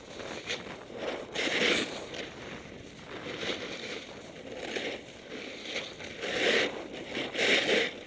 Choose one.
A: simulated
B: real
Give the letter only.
B